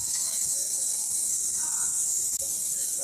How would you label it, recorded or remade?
remade